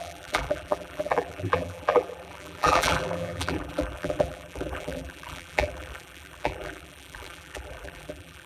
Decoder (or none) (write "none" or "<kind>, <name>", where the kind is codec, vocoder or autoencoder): vocoder, BigVGAN v2